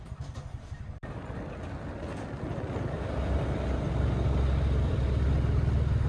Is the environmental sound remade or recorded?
recorded